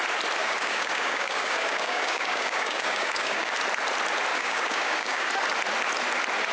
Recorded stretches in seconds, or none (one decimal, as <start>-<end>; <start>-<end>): 0.0-0.4; 3.5-4.3; 5.3-6.5